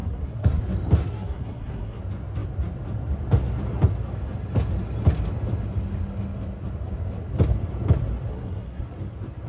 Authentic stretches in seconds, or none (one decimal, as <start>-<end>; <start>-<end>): 0.6-1.0; 2.0-8.3; 8.8-9.5